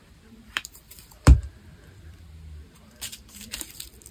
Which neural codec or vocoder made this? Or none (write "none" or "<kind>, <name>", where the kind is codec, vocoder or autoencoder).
vocoder, BigVGAN v2